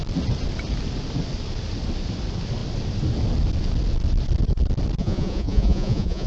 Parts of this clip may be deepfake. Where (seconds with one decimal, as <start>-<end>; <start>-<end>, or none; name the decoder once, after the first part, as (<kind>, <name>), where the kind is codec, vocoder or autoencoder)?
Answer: 5.0-6.3 (vocoder, Vocos)

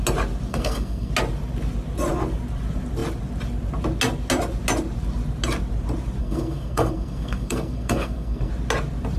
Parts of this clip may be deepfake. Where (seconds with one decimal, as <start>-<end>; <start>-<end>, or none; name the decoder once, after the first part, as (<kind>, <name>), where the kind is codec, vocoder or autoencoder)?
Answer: 0.5-1.1 (codec, SNAC); 6.2-8.5

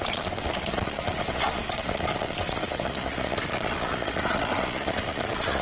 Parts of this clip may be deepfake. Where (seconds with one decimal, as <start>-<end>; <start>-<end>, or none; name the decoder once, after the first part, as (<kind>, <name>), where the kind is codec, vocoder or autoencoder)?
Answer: 0.0-5.6 (vocoder, Vocos)

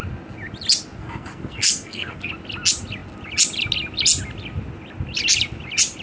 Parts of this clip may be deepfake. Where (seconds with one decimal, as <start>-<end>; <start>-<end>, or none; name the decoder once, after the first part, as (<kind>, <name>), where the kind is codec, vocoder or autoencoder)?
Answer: 1.0-2.3 (codec, SNAC)